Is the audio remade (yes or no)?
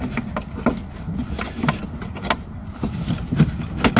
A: no